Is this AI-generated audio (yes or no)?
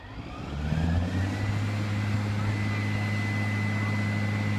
no